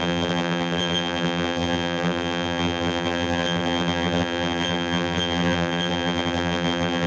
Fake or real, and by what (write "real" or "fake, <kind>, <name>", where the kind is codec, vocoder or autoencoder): fake, vocoder, BigVGAN v2